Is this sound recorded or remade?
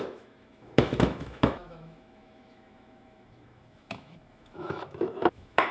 remade